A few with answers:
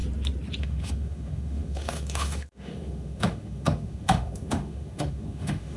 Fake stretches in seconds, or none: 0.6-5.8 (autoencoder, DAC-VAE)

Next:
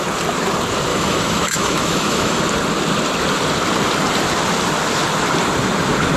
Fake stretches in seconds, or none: 0.9-2.4 (autoencoder, DAC-VAE)

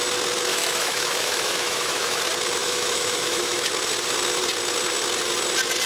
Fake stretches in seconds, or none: 0.5-2.2 (autoencoder, DAC-VAE); 2.6-3.7

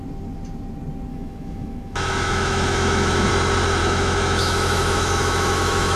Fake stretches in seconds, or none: 1.1-3.3 (autoencoder, DAC-VAE); 3.8-6.0

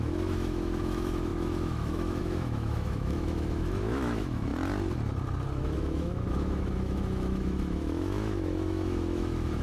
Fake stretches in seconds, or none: 0.0-4.5 (autoencoder, DAC-VAE); 5.5-9.6

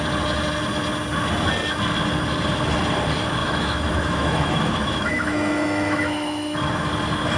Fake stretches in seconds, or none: 3.4-6.9 (autoencoder, DAC-VAE)